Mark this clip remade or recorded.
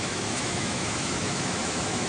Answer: remade